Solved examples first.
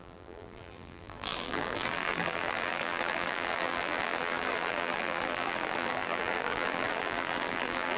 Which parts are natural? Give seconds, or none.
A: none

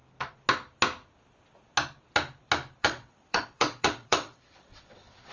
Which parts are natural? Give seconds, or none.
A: 0.0-2.8

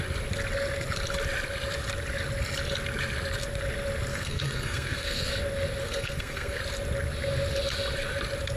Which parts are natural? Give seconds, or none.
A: 0.0-4.1; 5.3-5.8; 6.6-8.6

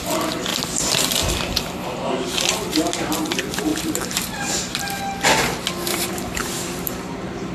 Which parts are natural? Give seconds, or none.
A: 0.0-0.5; 1.3-3.7; 5.0-5.9

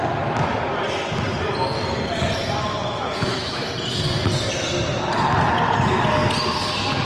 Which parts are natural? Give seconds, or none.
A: 0.0-2.8; 3.7-7.0